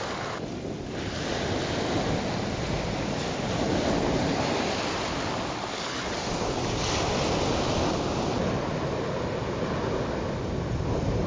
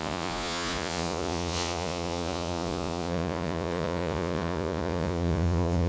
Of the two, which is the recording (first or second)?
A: first